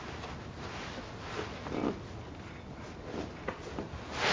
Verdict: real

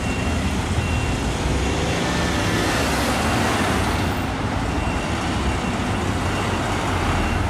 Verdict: real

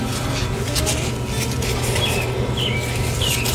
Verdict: real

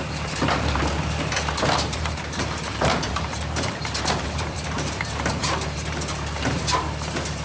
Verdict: fake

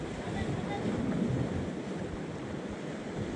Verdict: real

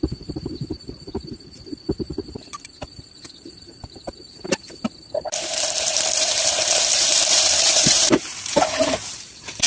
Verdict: fake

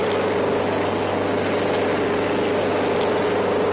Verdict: real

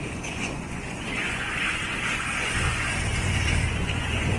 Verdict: fake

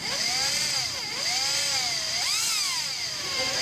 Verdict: real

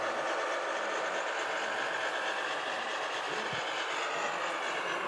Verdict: real